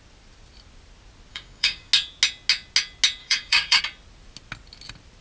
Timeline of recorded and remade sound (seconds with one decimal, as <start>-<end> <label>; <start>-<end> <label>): 0.0-1.3 recorded; 1.3-1.9 remade; 1.9-3.2 recorded; 3.2-3.8 remade; 3.8-5.2 recorded